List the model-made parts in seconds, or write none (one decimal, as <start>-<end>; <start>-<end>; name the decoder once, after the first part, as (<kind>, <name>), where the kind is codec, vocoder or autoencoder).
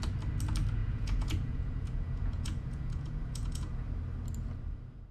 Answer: 0.8-3.9 (vocoder, Vocos)